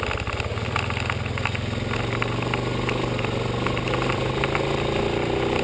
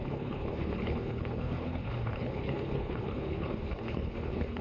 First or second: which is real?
first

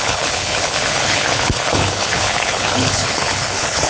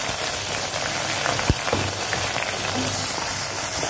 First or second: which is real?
second